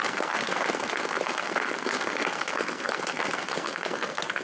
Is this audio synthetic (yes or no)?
yes